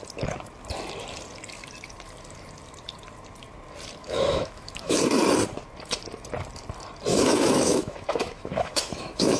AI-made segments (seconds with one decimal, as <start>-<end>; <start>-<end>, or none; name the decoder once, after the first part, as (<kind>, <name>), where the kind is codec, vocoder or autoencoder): 4.0-5.0 (autoencoder, DAC-VAE); 7.1-9.4